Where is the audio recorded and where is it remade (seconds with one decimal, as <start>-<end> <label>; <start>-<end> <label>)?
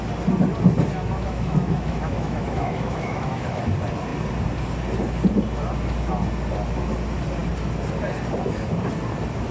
0.0-0.9 recorded; 0.9-3.6 remade; 3.6-9.5 recorded